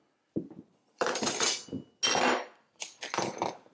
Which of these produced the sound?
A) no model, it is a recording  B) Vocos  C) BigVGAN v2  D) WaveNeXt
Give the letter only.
A